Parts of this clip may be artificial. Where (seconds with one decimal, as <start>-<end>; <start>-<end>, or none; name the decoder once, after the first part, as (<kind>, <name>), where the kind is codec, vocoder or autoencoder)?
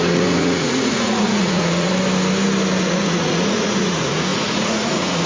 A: 0.0-1.9 (vocoder, Vocos); 2.9-5.3